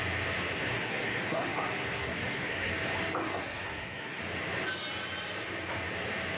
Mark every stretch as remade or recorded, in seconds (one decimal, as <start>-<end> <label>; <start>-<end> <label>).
0.0-0.5 recorded; 0.5-2.7 remade; 2.7-3.2 recorded; 3.2-4.2 remade; 4.2-6.4 recorded